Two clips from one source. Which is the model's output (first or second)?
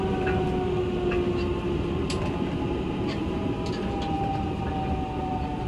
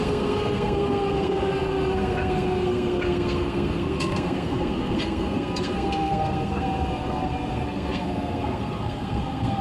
second